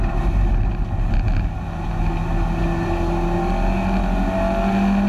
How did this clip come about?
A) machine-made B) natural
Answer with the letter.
B